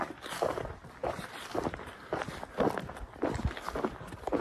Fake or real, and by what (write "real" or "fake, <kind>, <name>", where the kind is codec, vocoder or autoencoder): real